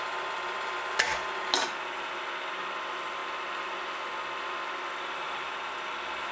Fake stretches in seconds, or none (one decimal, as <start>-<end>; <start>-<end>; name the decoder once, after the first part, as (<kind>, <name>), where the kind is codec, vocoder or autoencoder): none